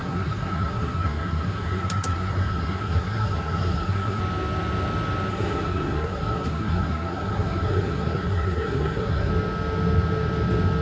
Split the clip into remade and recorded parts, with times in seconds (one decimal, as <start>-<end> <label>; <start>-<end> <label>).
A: 0.0-4.2 remade; 4.2-5.3 recorded; 5.3-9.3 remade; 9.3-10.8 recorded